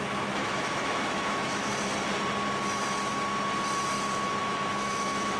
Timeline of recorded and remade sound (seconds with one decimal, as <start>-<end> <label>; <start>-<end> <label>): 0.0-1.7 remade; 1.7-4.4 recorded; 4.4-5.4 remade